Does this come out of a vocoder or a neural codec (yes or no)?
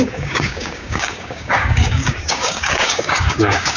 yes